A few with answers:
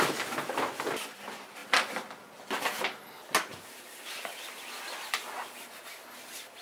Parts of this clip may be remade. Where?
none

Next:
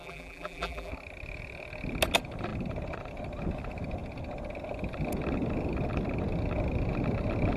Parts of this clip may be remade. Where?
0.0-0.9 (vocoder, BigVGAN v2)

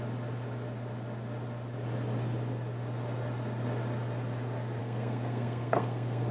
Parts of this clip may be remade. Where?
4.8-6.3 (codec, SNAC)

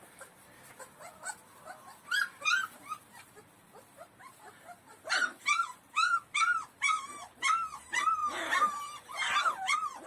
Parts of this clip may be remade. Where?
0.0-10.1 (vocoder, BigVGAN v2)

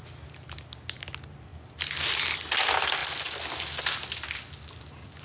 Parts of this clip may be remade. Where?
none